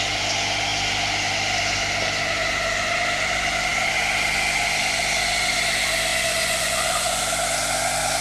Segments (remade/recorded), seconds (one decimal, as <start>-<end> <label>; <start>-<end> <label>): 0.0-6.1 recorded; 6.1-7.2 remade; 7.2-8.2 recorded